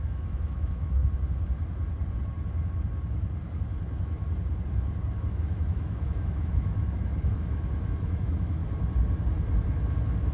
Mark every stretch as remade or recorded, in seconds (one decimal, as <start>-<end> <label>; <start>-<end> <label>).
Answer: 0.0-1.0 remade; 1.0-5.2 recorded; 5.2-8.6 remade; 8.6-10.3 recorded